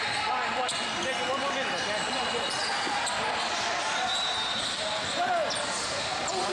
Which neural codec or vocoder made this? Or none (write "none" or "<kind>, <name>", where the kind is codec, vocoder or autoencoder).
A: none